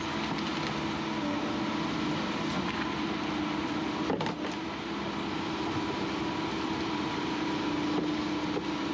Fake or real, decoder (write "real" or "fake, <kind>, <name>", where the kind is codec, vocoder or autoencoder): real